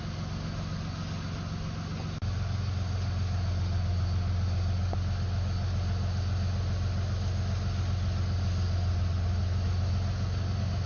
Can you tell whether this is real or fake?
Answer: real